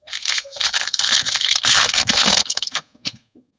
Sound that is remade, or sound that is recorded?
remade